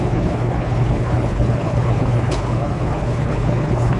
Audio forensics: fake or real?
fake